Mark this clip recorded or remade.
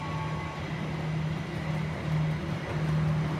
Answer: recorded